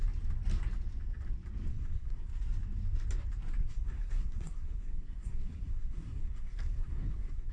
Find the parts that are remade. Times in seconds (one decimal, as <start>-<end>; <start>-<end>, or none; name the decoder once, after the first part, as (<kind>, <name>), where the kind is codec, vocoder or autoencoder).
1.7-2.3 (codec, SNAC); 3.6-7.5